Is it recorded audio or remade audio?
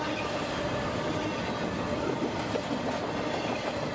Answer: recorded